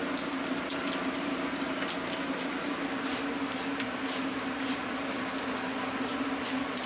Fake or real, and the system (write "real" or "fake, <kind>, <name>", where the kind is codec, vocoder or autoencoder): real